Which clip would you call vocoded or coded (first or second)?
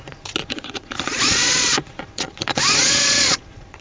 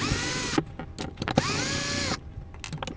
first